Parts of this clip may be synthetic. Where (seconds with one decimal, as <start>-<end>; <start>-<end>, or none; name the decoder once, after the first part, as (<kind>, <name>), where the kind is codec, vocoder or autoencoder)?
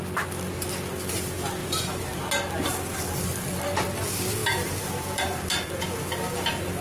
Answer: 1.6-2.2 (vocoder, BigVGAN v2); 4.4-5.4